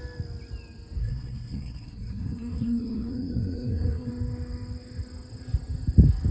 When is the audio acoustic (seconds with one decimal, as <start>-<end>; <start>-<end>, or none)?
0.0-1.0; 4.1-6.3